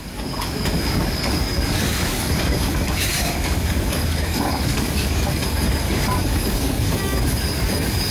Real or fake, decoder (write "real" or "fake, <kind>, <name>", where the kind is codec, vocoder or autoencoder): fake, codec, DAC